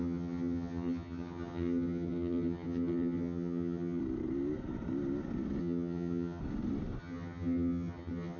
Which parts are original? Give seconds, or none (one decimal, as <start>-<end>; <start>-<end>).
4.0-5.6; 6.4-7.0